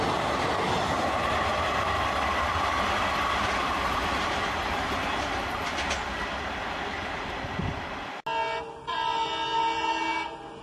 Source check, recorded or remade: recorded